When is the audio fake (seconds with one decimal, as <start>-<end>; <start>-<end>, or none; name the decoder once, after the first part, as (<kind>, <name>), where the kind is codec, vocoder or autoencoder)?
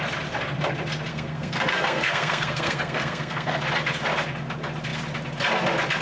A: 1.1-3.6 (codec, SNAC)